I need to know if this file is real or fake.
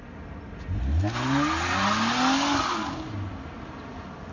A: real